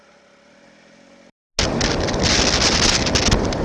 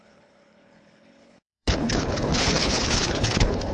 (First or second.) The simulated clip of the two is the second